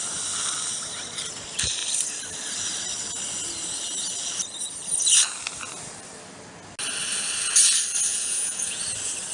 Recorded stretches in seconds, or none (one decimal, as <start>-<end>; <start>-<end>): 0.0-8.1; 8.8-9.3